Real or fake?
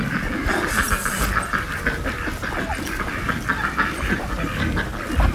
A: real